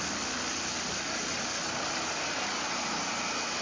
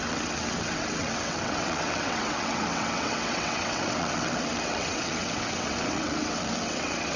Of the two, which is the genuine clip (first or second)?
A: first